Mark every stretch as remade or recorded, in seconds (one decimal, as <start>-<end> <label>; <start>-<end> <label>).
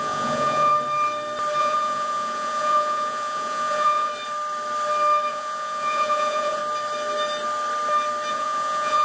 0.0-0.7 remade; 0.7-1.6 recorded; 1.6-4.1 remade; 4.1-5.3 recorded; 5.3-6.6 remade; 6.6-8.3 recorded; 8.3-9.0 remade